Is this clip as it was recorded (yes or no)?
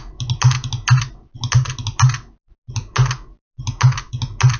yes